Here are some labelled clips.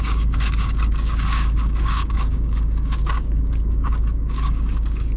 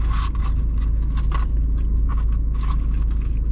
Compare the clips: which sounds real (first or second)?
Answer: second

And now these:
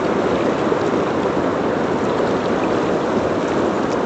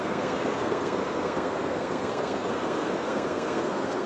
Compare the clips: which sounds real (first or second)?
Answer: first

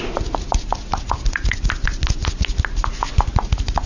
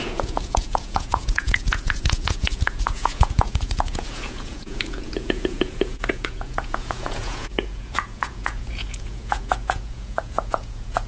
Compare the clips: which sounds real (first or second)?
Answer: first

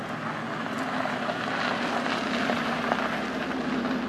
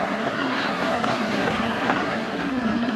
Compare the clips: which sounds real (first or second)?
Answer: first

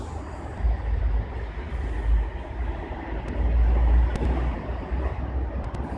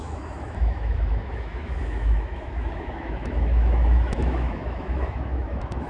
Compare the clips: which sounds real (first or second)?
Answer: first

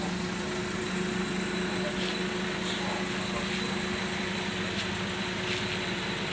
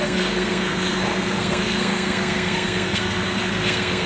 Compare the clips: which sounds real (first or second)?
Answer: first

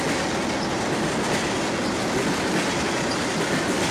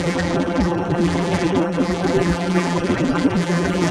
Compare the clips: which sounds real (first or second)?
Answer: first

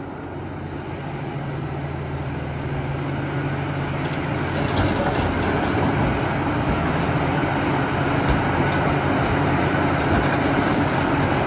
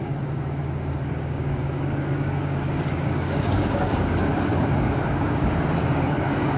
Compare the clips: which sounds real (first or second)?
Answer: first